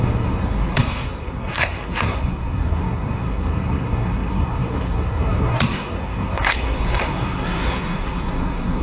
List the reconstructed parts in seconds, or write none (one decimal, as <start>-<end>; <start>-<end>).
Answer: 0.0-8.8